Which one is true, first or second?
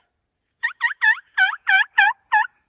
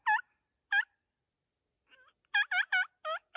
second